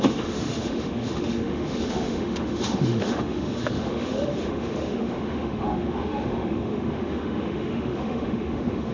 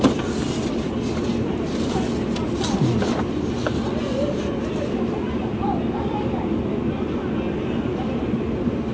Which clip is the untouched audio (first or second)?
second